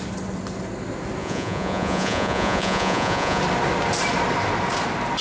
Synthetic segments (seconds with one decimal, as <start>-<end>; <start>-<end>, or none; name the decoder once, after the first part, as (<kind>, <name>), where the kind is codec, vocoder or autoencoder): 1.2-3.4 (vocoder, Vocos)

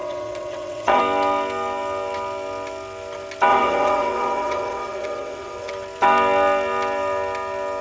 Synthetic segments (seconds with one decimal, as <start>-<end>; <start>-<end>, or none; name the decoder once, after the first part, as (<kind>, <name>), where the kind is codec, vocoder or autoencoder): 0.0-1.0 (vocoder, WaveNeXt); 3.5-5.7

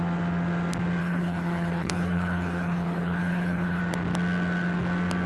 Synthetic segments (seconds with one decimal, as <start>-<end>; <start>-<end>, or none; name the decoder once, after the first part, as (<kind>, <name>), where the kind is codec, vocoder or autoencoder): 1.0-3.8 (codec, HILCodec)

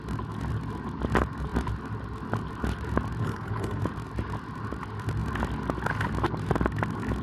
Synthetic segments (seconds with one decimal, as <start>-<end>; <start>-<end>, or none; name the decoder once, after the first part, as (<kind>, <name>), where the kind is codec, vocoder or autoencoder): 3.2-3.8 (codec, SNAC)

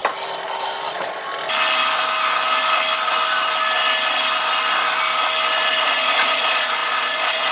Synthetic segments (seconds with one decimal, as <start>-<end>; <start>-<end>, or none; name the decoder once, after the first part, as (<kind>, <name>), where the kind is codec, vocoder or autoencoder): 0.9-1.3 (vocoder, Vocos); 5.8-7.5